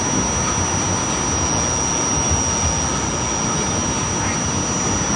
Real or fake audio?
real